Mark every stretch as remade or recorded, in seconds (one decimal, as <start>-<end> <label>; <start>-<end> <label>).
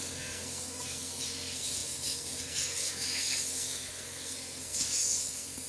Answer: 0.0-5.7 remade